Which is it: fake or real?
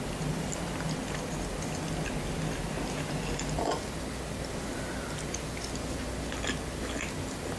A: real